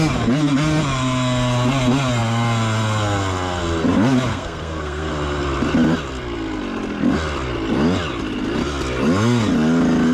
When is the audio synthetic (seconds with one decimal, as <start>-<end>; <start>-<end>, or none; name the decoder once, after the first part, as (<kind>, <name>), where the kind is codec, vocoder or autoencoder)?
4.3-5.1 (codec, SNAC)